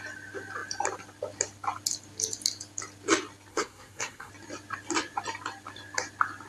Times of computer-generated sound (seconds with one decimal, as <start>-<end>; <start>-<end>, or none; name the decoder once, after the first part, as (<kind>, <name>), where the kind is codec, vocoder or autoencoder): 3.5-4.3 (codec, SNAC)